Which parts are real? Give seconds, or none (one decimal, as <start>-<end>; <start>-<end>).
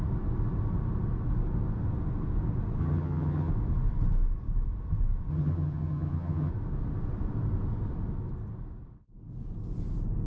0.0-2.8; 3.5-5.3; 6.5-10.3